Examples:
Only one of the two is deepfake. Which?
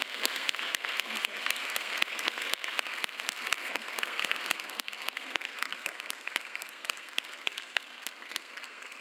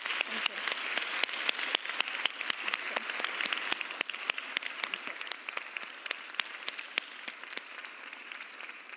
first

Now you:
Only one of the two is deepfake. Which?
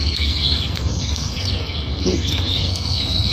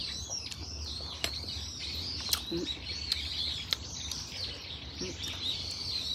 first